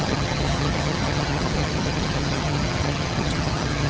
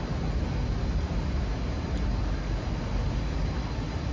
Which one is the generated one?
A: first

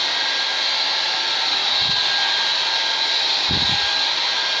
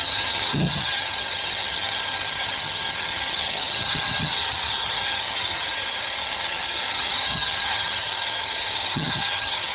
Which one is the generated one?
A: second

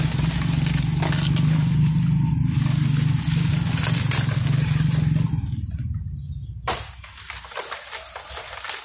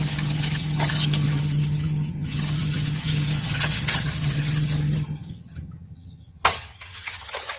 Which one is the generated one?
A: second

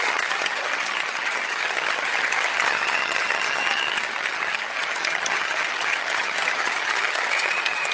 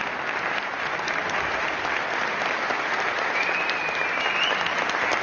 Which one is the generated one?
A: first